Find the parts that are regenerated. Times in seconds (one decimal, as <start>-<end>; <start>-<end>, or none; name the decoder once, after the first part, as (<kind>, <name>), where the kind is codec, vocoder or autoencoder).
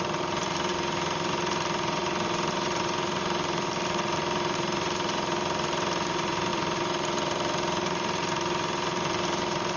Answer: 0.0-0.7 (vocoder, BigVGAN v2); 1.3-9.8